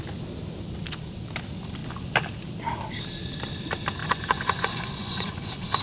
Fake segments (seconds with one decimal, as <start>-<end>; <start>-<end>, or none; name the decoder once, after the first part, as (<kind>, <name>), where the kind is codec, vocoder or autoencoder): 4.0-5.8 (vocoder, Vocos)